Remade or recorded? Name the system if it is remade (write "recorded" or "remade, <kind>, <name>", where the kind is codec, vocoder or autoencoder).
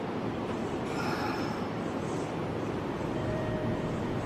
remade, vocoder, BigVGAN v2